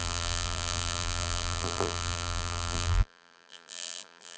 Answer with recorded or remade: remade